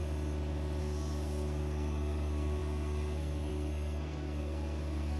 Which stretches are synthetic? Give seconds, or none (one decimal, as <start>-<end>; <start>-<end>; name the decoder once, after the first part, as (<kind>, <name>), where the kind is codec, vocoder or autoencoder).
0.8-5.2 (codec, SNAC)